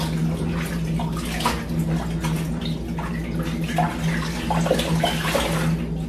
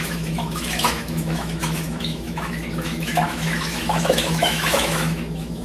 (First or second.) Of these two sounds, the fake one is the second